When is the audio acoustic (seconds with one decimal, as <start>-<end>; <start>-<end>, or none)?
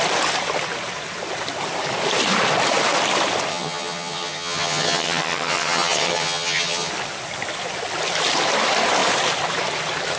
0.0-3.5; 6.9-10.2